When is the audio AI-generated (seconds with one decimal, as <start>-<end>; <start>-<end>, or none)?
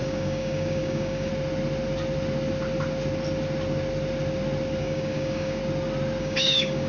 0.0-1.3; 4.8-5.6; 6.2-6.9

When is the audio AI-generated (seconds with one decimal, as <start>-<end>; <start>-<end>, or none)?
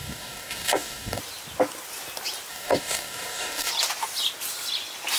0.0-1.2; 2.5-3.7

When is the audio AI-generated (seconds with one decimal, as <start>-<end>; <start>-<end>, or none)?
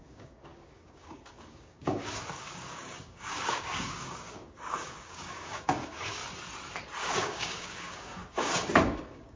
0.0-6.2; 7.0-9.4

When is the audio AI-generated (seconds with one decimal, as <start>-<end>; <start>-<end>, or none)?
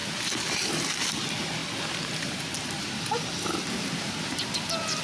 none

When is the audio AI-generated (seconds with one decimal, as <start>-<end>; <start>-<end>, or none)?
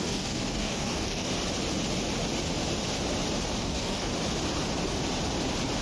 0.0-1.3; 3.6-4.1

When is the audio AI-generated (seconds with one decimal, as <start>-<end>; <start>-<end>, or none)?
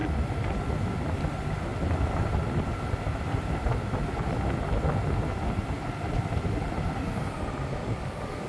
7.8-8.5